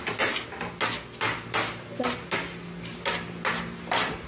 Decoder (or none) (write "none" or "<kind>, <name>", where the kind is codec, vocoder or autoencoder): none